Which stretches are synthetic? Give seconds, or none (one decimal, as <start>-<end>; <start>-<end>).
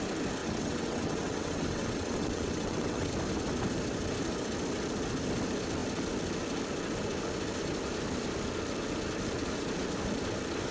0.4-3.1